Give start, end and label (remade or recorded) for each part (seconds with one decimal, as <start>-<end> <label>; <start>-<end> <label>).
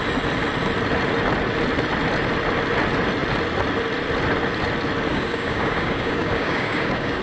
0.0-5.1 recorded; 5.1-7.2 remade